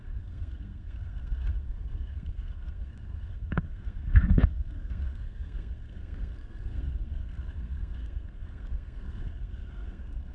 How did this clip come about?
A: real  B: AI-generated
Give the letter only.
B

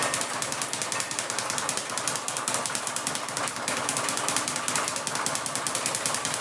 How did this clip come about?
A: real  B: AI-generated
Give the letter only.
A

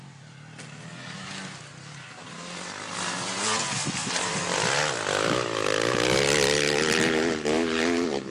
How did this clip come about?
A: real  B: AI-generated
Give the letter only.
A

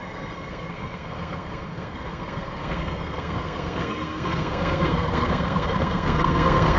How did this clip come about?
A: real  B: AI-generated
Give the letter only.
B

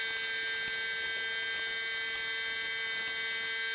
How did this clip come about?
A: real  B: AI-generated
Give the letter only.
A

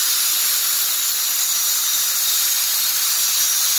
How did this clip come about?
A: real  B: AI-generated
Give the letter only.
A